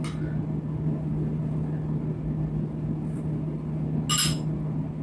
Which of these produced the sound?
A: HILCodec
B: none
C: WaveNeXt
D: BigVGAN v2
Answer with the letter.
B